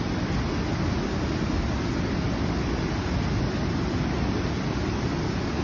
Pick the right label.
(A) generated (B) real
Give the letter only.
B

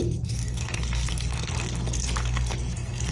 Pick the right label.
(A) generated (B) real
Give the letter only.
A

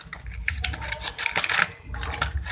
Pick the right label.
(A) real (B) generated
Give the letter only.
A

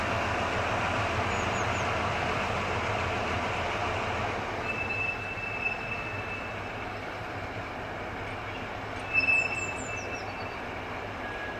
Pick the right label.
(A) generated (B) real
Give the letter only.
B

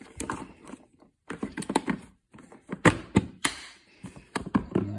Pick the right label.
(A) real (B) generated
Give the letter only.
B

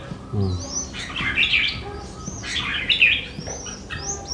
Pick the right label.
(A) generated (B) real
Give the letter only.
B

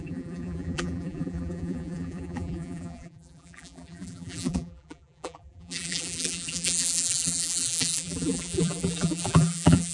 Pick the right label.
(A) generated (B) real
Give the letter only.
A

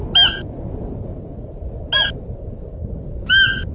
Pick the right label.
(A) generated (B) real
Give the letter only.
B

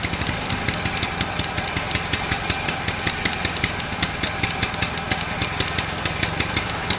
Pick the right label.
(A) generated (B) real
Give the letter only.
A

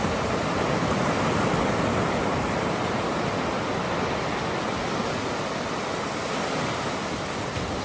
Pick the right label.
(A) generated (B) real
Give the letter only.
B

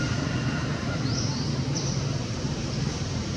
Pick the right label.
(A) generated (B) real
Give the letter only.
A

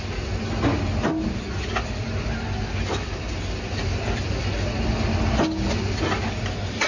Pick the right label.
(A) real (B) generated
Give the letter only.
A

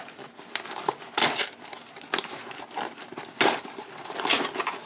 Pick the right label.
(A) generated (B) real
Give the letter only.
B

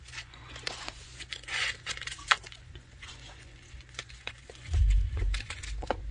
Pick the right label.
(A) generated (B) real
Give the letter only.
A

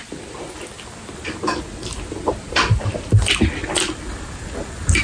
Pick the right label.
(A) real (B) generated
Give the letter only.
A